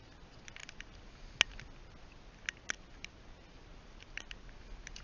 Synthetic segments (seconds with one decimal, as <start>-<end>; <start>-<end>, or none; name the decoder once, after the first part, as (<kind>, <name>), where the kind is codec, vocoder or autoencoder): none